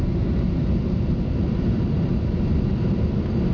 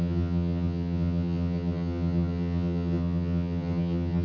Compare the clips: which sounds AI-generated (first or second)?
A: second